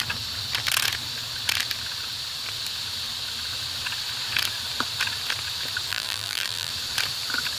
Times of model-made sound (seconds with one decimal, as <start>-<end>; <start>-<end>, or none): 5.9-6.7